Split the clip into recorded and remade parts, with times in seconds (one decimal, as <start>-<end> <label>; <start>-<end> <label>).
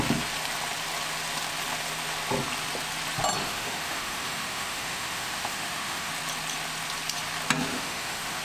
0.0-3.4 recorded; 3.4-6.1 remade; 6.1-7.7 recorded; 7.7-8.4 remade